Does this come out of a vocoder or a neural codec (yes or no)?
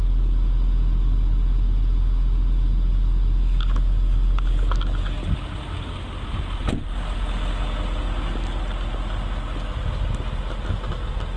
no